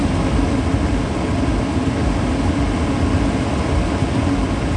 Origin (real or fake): real